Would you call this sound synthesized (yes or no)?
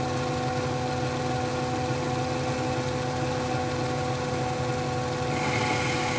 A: no